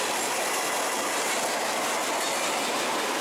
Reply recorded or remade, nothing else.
recorded